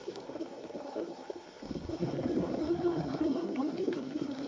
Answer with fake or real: fake